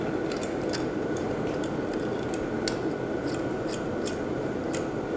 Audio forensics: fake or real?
real